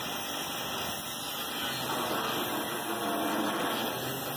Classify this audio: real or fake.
real